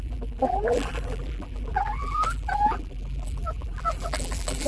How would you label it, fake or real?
fake